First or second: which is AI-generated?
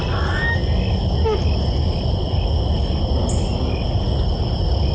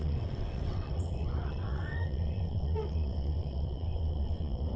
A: second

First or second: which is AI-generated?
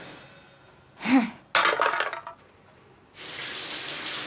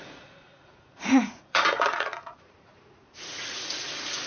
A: second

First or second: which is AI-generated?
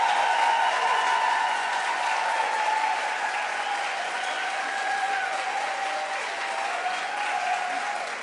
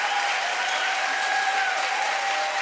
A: first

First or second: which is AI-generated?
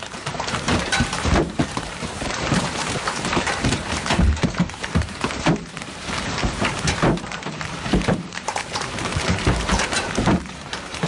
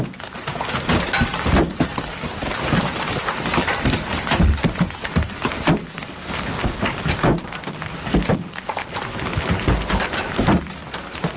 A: first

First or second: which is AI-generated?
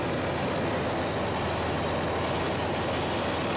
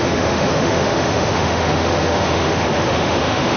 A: second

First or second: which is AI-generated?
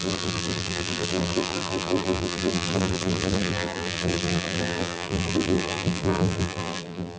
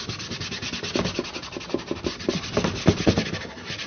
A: first